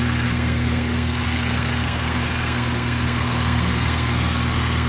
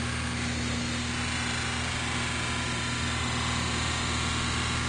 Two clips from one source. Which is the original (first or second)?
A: second